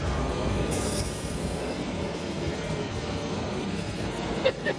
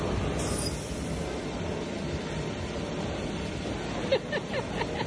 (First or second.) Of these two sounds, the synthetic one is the first